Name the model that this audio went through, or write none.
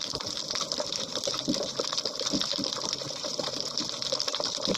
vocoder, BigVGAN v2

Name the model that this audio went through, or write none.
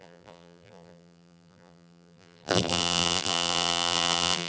vocoder, BigVGAN v2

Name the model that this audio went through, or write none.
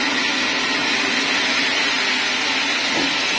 none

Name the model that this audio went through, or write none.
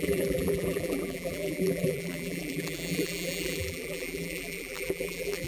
vocoder, BigVGAN v2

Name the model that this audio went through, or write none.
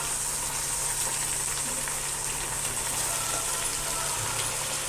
none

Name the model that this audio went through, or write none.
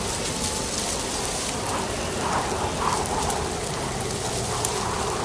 none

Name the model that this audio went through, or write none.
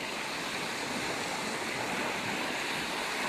none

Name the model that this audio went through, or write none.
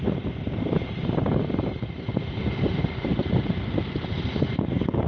vocoder, BigVGAN v2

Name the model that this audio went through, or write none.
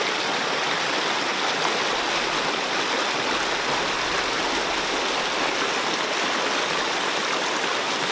none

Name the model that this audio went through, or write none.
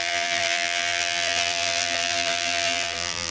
vocoder, BigVGAN v2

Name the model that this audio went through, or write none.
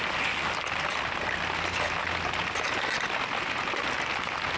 none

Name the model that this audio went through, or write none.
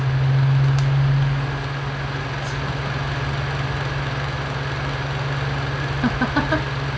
none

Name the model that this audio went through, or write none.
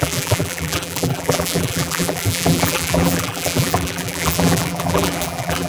vocoder, BigVGAN v2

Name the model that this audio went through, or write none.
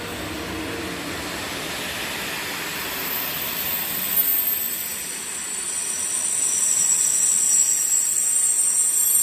none